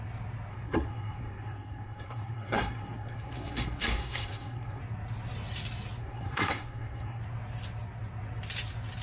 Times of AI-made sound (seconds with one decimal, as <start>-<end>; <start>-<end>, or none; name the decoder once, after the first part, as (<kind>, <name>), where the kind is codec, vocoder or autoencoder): 0.5-4.8 (codec, SNAC); 6.0-7.2